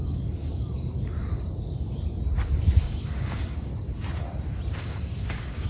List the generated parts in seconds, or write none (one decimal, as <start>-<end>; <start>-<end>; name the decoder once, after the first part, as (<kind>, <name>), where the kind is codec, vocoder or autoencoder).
0.0-0.9 (codec, DAC); 2.8-3.7; 4.8-5.7